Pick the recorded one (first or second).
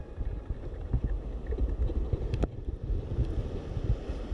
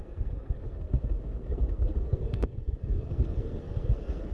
first